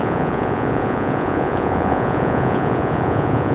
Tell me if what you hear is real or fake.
fake